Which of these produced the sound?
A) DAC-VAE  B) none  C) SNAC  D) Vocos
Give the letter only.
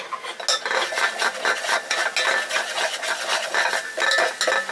B